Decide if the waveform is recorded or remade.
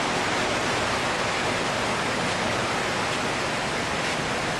recorded